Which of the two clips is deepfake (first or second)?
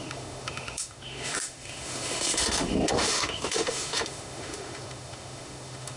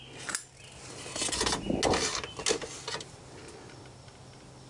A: first